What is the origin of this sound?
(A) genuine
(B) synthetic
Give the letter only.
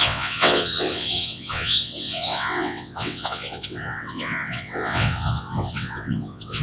B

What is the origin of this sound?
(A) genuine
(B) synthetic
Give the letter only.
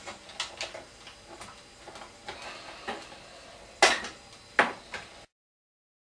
A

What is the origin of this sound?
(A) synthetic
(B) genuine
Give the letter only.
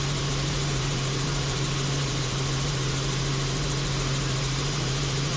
A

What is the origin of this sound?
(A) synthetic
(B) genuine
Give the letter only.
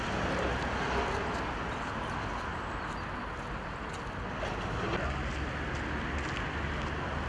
B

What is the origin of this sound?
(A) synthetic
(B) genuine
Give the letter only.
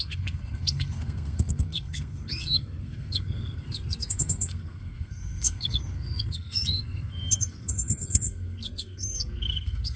A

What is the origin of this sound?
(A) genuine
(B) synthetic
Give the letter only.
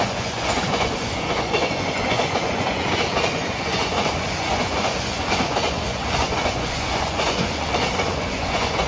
B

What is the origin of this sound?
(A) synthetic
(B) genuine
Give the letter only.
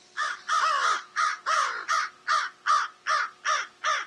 B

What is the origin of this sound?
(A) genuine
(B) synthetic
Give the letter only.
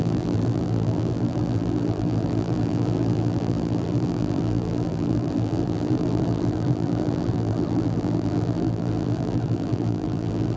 B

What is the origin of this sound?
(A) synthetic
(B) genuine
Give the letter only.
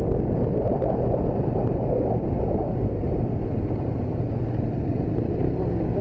B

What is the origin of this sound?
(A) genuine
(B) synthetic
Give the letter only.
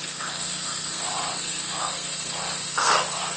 B